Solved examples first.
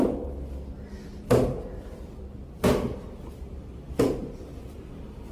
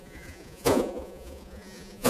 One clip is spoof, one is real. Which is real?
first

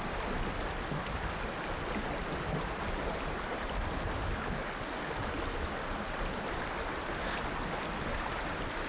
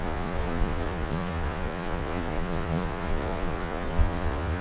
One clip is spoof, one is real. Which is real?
first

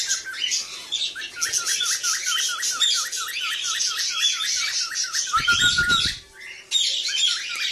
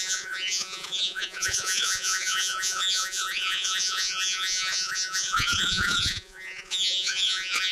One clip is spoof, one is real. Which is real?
first